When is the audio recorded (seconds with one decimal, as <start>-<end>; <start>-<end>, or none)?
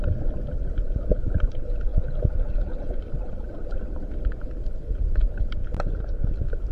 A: 0.0-1.9; 3.0-6.7